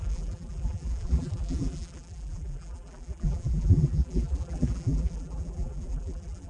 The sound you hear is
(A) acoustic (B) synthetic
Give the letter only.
B